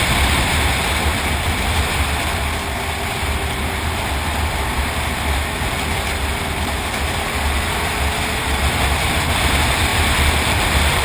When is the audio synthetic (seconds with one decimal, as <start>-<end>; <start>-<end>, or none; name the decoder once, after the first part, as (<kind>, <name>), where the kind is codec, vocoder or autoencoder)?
9.9-11.0 (vocoder, BigVGAN v2)